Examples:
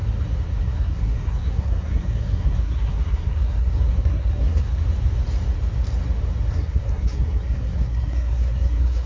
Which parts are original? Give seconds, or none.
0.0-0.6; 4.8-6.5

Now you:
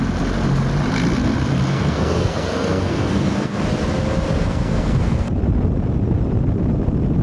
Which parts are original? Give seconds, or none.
0.0-1.7; 3.6-4.4; 5.3-7.2

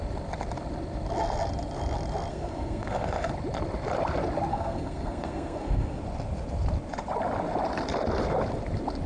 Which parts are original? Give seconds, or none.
0.0-2.3; 3.3-4.5; 6.0-9.1

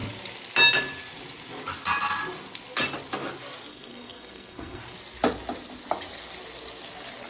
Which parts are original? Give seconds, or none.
0.0-3.7; 4.8-7.3

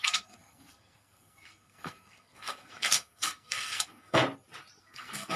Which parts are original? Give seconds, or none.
4.2-4.8

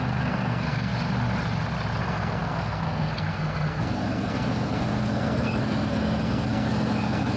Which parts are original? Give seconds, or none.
0.9-2.0